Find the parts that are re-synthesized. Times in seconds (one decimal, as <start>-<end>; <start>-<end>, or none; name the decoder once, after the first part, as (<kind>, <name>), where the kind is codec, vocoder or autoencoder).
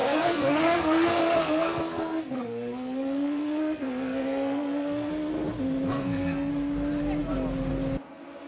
0.0-5.1 (codec, SNAC); 5.9-6.5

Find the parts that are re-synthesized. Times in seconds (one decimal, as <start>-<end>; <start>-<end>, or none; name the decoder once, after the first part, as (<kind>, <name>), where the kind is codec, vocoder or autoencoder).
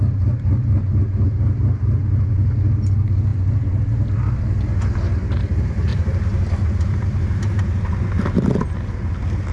5.9-7.6 (vocoder, BigVGAN v2)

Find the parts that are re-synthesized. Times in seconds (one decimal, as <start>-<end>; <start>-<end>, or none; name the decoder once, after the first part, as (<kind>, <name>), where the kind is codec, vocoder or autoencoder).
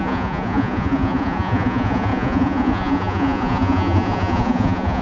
0.0-5.0 (vocoder, Vocos)